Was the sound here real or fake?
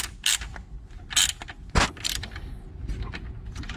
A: real